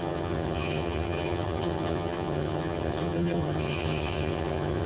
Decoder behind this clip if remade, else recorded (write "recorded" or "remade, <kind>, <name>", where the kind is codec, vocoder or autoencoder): remade, vocoder, HiFi-GAN